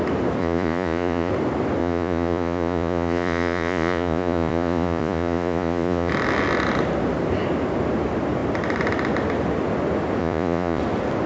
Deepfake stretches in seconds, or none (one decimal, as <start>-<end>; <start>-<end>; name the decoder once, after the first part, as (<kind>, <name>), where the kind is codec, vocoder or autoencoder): 0.4-1.3 (vocoder, Vocos); 1.8-6.1; 10.2-10.8